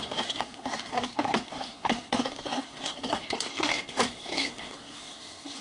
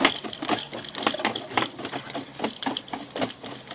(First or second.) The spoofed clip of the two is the first